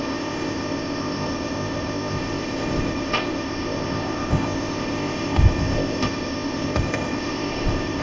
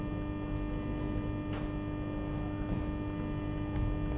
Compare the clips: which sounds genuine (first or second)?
second